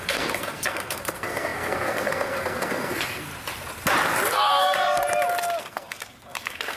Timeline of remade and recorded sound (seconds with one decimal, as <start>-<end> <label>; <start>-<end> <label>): 0.0-3.3 remade; 3.3-4.3 recorded; 4.3-5.0 remade; 5.0-5.6 recorded; 5.6-6.8 remade